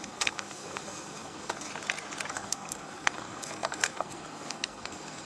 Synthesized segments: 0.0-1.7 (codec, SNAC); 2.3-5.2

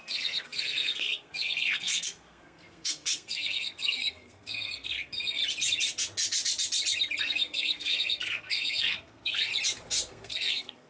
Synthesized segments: 0.0-5.4 (codec, SNAC); 7.2-9.5; 10.1-10.9

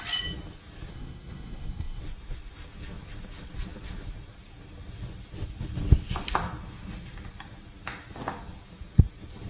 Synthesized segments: 0.9-2.0 (codec, SNAC)

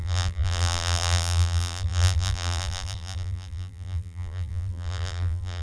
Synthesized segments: 0.0-5.6 (vocoder, BigVGAN v2)

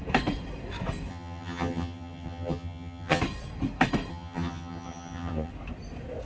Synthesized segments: 1.1-3.2 (vocoder, HiFi-GAN); 4.1-5.5